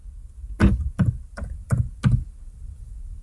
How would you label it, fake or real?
real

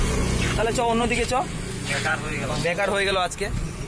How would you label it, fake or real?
fake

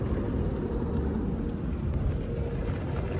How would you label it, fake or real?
real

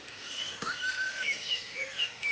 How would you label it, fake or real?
fake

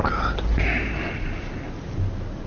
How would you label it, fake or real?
real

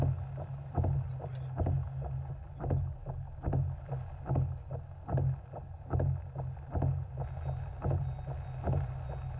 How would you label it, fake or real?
real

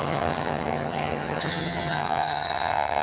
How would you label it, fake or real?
fake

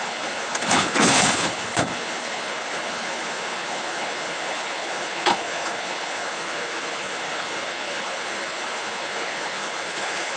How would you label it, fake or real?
fake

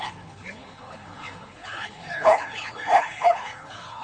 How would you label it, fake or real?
fake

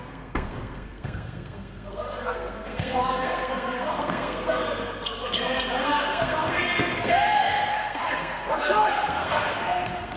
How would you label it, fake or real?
fake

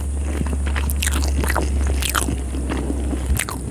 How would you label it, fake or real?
real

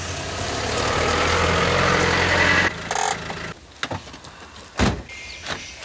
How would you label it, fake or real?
real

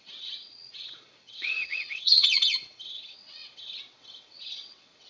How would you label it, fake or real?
fake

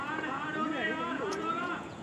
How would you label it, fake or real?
fake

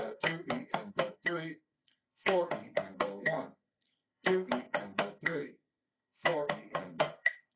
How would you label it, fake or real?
fake